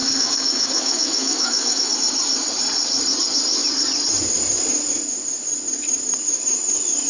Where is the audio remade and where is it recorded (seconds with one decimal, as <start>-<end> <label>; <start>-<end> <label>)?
0.0-1.9 remade; 1.9-7.1 recorded